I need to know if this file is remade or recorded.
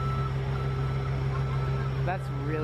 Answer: recorded